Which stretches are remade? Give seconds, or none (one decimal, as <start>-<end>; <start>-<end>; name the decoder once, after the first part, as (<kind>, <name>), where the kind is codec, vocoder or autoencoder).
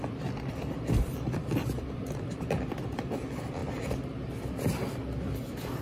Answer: 0.0-3.6 (vocoder, BigVGAN v2)